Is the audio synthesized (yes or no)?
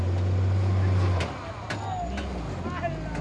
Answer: no